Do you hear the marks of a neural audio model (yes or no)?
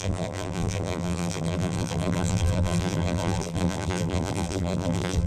yes